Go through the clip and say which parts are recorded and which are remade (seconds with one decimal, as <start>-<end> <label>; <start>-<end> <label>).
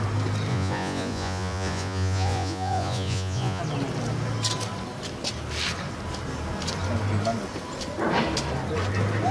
0.0-0.5 recorded; 0.5-3.6 remade; 3.6-9.3 recorded